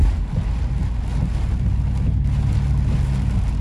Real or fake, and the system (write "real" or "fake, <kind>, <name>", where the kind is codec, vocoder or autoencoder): real